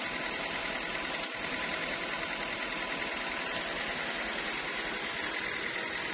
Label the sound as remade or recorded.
recorded